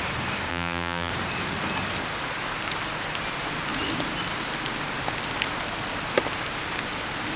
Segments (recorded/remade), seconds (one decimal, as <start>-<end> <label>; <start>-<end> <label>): 0.0-0.5 recorded; 0.5-1.1 remade; 1.1-7.4 recorded